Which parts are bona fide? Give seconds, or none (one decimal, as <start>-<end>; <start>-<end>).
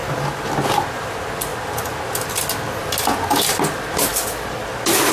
0.0-5.1